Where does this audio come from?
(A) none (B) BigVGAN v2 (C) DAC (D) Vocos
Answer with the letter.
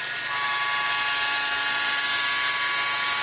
A